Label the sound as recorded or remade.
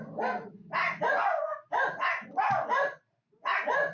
recorded